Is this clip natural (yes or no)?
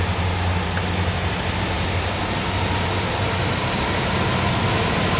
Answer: yes